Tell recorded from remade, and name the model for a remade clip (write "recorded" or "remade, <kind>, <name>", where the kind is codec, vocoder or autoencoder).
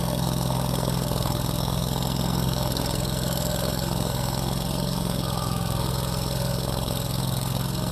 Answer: remade, codec, SNAC